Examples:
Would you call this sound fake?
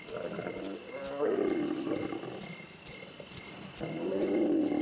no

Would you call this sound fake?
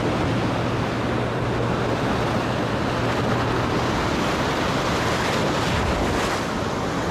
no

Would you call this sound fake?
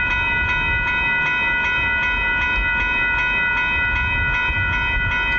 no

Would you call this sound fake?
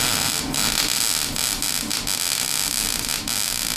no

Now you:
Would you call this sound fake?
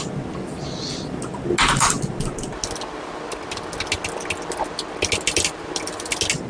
no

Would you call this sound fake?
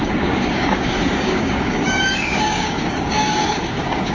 yes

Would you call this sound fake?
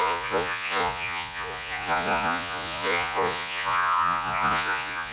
yes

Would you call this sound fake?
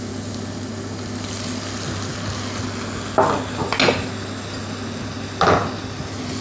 no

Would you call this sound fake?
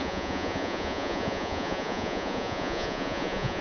yes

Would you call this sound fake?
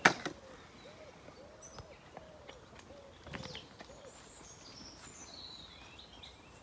no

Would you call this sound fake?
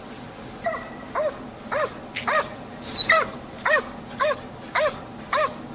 no